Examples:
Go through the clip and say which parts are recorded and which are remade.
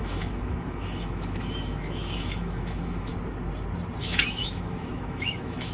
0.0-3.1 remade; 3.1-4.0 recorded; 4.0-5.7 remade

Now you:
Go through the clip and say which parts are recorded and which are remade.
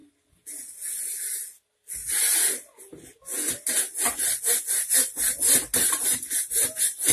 0.0-7.1 recorded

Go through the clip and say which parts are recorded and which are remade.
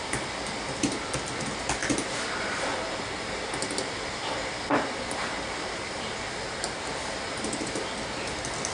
0.0-8.7 recorded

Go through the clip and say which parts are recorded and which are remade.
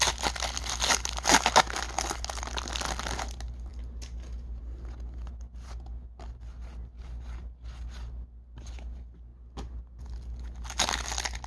0.0-11.5 recorded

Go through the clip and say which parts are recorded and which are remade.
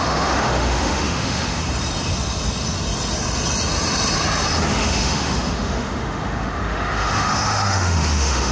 0.0-1.6 remade; 1.6-4.7 recorded; 4.7-8.5 remade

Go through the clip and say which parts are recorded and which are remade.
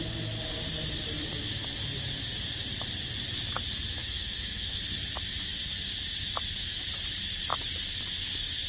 0.0-4.0 recorded; 4.0-4.8 remade; 4.8-8.7 recorded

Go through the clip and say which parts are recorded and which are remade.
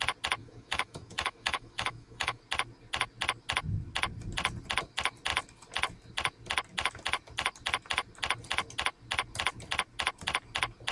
0.0-0.4 recorded; 0.4-2.4 remade; 2.4-10.9 recorded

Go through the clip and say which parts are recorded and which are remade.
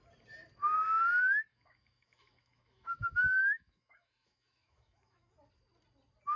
0.0-1.5 recorded; 1.5-5.3 remade; 5.3-6.4 recorded